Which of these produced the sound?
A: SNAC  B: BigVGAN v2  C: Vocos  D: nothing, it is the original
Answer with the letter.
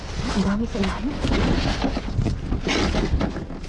D